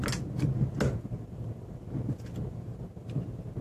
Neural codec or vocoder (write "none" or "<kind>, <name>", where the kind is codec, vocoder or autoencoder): none